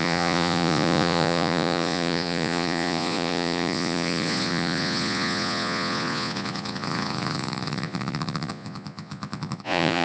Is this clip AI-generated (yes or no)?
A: yes